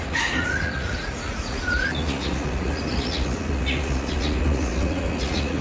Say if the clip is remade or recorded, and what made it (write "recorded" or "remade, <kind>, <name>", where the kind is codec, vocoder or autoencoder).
remade, vocoder, Vocos